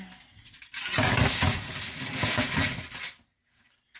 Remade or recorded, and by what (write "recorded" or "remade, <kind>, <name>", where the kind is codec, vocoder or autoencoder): recorded